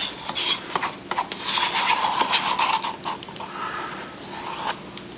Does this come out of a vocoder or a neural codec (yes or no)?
no